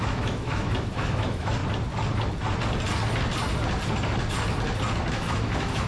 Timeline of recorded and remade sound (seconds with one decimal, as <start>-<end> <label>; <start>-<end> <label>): 0.0-1.6 remade; 1.6-5.1 recorded; 5.1-5.9 remade